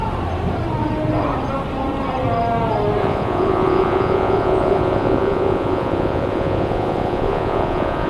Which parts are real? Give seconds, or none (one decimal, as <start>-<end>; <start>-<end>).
0.0-3.0